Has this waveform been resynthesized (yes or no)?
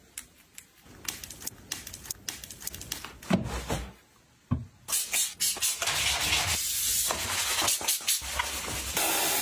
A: no